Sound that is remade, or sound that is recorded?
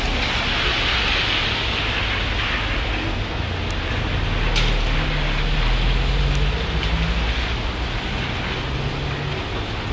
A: recorded